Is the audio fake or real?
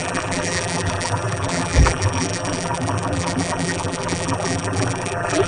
fake